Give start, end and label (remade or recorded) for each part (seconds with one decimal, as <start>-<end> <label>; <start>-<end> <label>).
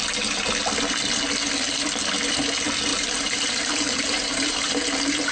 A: 0.0-2.9 recorded; 2.9-4.7 remade; 4.7-5.3 recorded